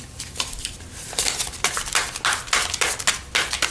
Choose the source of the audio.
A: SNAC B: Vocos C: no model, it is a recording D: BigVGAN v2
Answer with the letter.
C